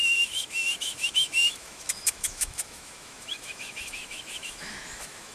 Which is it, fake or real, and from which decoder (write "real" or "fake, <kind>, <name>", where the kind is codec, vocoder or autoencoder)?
fake, autoencoder, DAC-VAE